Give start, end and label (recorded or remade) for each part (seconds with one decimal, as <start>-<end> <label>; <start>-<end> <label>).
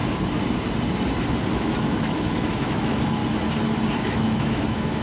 0.0-1.5 recorded; 1.5-3.2 remade; 3.2-4.0 recorded; 4.0-5.0 remade